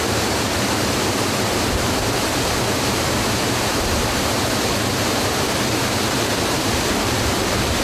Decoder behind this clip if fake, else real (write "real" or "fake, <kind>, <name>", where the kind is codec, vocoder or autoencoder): fake, vocoder, BigVGAN v2